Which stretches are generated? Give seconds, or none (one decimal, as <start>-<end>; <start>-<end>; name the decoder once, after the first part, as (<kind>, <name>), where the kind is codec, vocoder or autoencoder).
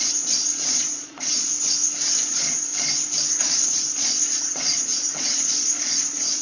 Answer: 0.0-1.5 (vocoder, Vocos); 2.3-2.7; 3.4-6.4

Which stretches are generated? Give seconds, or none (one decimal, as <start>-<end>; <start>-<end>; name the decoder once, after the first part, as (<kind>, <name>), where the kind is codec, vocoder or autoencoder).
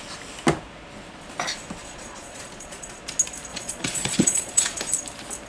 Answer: 1.8-3.0 (vocoder, Vocos); 3.5-4.8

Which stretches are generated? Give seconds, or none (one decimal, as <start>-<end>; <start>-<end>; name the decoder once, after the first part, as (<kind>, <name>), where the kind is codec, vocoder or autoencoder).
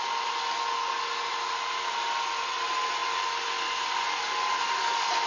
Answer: none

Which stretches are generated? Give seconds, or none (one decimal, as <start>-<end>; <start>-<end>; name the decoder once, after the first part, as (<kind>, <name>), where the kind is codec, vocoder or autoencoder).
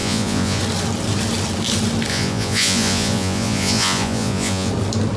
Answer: 0.0-0.6 (vocoder, Vocos); 2.1-4.7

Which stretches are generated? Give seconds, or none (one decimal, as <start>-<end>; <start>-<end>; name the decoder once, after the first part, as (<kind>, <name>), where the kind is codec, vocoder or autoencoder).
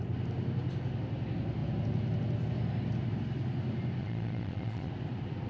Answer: 4.0-4.9 (vocoder, Vocos)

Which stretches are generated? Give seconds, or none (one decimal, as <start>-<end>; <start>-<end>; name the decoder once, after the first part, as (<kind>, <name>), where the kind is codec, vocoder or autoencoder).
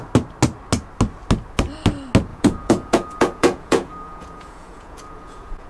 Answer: 2.3-5.7 (vocoder, Vocos)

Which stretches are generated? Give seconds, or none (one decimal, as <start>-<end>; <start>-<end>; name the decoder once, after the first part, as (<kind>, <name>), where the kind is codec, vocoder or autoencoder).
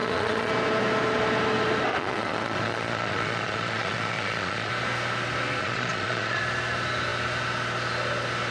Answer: 0.0-0.5 (vocoder, Vocos); 1.9-4.7; 5.6-6.4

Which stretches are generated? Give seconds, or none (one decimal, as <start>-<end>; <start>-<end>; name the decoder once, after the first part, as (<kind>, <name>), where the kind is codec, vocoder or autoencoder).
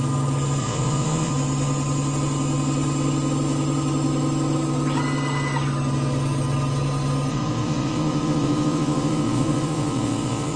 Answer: 0.6-1.3 (vocoder, Vocos); 7.3-10.6